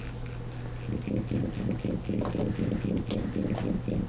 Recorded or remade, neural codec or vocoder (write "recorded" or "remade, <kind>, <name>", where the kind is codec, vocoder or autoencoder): recorded